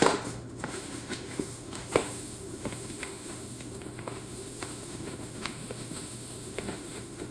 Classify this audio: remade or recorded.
remade